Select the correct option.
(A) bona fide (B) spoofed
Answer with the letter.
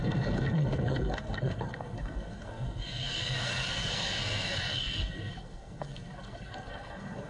B